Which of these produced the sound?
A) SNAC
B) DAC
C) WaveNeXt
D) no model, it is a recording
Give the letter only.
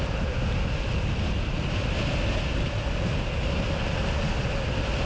D